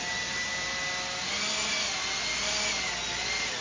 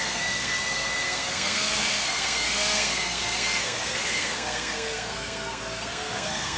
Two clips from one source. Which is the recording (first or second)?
first